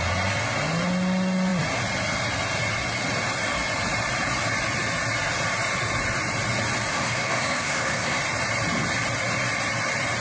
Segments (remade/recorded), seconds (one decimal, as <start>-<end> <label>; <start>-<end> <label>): 0.0-6.9 recorded; 6.9-8.2 remade; 8.2-10.2 recorded